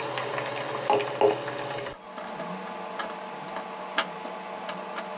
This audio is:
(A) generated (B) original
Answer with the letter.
B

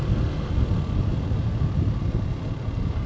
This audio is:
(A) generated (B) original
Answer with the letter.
B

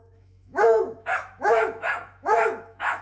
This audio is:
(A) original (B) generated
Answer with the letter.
B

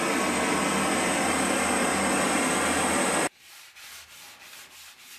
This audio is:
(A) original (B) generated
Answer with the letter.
A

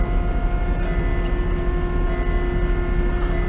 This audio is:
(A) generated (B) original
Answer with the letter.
B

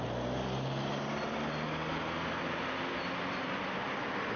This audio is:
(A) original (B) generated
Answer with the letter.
A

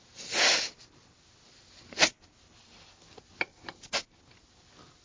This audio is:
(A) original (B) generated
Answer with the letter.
A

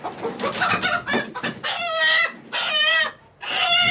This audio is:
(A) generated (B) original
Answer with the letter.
B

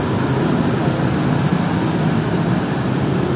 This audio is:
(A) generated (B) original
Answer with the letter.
B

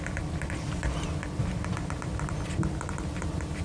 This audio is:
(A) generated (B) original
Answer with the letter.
B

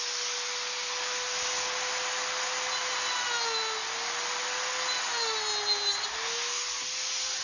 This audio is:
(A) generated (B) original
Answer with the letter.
B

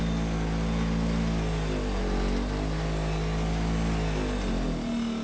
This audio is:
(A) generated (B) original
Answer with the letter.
B